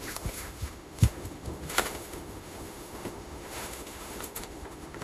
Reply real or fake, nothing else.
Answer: fake